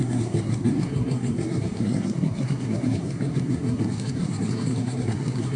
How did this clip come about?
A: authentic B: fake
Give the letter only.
B